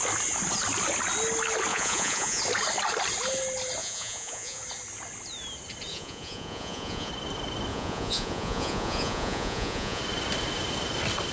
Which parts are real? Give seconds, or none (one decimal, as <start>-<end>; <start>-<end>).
0.0-1.7; 2.4-3.8; 4.6-5.9; 7.1-7.7; 10.0-11.3